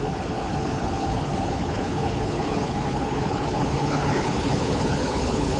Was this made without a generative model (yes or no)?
no